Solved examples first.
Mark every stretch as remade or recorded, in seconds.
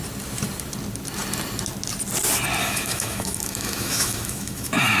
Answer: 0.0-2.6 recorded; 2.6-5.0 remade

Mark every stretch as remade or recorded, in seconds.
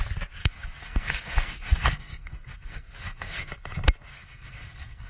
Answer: 0.0-0.4 recorded; 0.4-3.5 remade; 3.5-4.1 recorded; 4.1-5.1 remade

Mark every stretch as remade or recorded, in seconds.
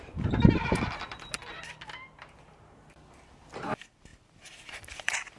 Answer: 0.0-5.4 recorded